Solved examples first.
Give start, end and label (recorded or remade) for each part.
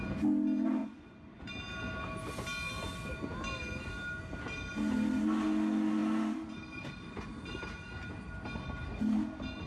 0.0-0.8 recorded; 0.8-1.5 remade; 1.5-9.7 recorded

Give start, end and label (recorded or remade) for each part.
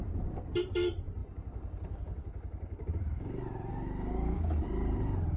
0.0-5.4 remade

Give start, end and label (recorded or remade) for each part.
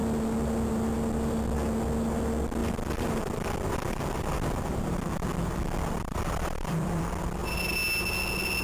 0.0-2.6 recorded; 2.6-7.0 remade; 7.0-8.6 recorded